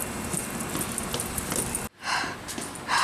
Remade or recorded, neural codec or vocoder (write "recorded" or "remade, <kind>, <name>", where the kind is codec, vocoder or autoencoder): recorded